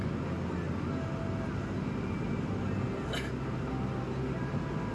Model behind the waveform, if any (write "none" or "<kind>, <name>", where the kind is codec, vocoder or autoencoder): none